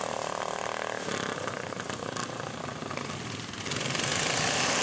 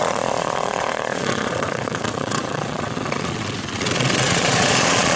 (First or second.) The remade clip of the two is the second